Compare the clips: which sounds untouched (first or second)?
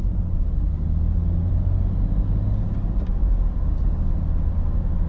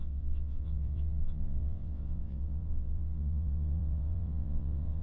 first